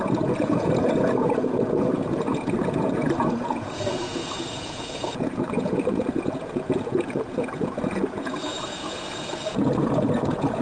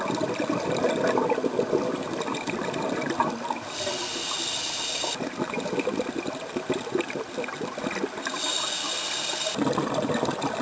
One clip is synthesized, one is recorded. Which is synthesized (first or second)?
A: first